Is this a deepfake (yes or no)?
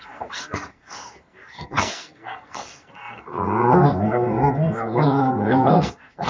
yes